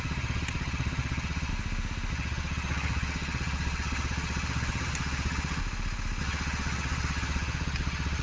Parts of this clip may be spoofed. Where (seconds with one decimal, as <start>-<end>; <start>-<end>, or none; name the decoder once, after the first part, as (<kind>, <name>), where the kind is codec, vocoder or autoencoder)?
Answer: 0.0-1.5 (vocoder, HiFi-GAN); 2.1-5.6; 6.2-8.2